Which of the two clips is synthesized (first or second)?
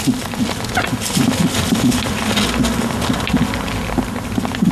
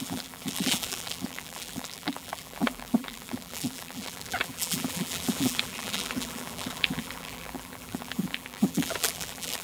second